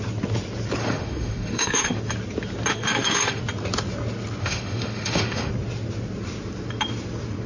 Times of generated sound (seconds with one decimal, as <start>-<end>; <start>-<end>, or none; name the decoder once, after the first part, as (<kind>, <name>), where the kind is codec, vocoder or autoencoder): 0.8-2.0 (autoencoder, DAC-VAE); 2.7-3.4; 4.4-5.5